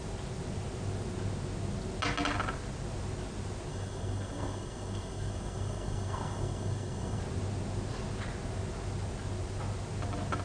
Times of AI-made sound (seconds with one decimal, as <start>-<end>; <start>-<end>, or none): 3.7-7.2